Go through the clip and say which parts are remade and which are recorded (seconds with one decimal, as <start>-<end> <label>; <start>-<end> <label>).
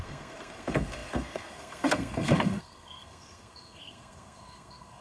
0.0-5.0 remade